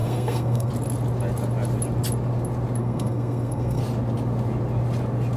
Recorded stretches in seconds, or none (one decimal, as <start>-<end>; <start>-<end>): 0.7-2.8; 3.8-5.4